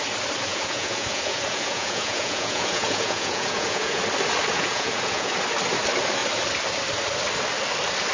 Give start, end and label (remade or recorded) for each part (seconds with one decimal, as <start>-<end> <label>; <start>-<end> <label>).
0.0-0.5 recorded; 0.5-4.0 remade; 4.0-4.5 recorded; 4.5-5.3 remade; 5.3-8.1 recorded